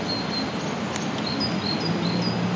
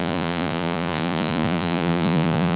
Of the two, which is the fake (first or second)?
second